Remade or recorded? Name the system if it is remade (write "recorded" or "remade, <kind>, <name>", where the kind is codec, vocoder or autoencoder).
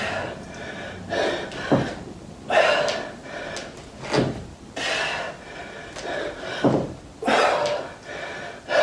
recorded